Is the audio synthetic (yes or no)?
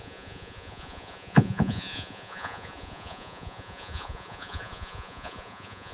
yes